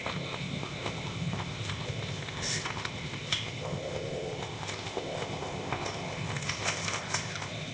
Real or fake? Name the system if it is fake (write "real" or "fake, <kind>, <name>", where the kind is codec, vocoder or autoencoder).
fake, codec, ZipCodec